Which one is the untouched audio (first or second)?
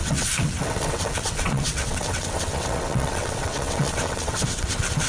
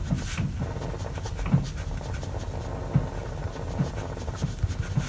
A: second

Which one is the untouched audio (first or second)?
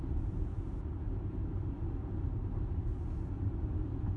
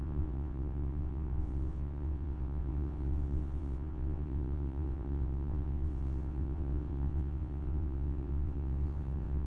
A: first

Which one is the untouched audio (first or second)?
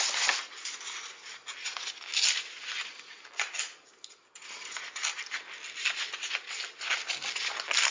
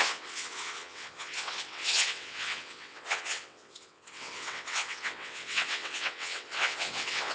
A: first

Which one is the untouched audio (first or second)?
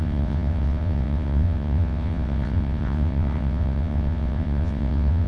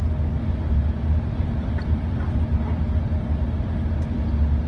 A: second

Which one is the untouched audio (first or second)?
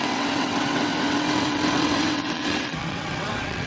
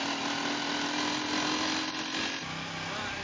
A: second